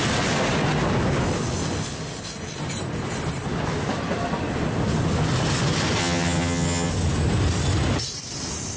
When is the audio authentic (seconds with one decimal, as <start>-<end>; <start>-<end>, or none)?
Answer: 0.0-6.0; 6.9-8.8